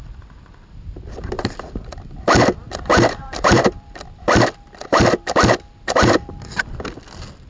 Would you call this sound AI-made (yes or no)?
yes